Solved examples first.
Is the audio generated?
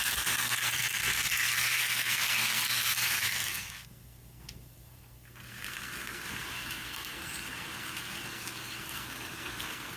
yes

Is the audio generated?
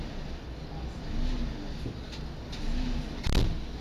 no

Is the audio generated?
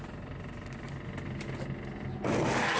no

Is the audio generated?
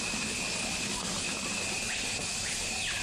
no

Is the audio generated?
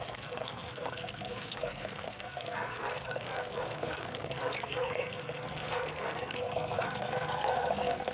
yes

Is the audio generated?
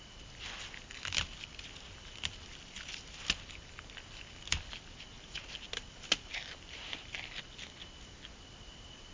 no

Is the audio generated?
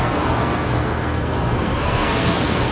yes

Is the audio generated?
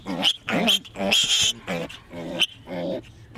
no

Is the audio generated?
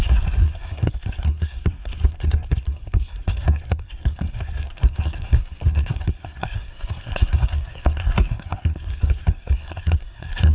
yes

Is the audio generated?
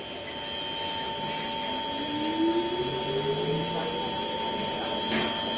no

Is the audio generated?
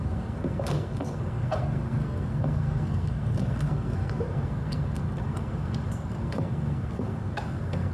yes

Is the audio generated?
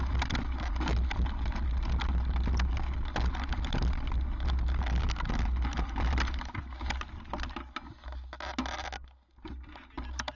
no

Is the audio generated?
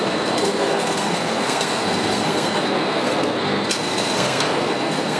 yes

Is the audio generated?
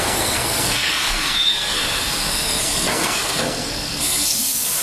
yes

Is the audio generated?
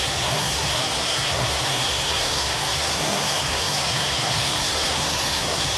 yes